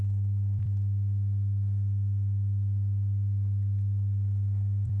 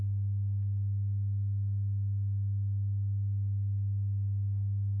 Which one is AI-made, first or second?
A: first